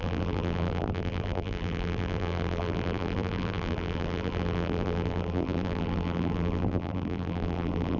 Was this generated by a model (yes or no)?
yes